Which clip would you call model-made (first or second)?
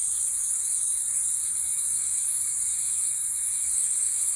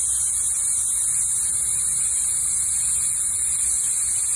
first